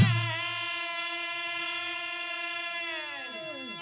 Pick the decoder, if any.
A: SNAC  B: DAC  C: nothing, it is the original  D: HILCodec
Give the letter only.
C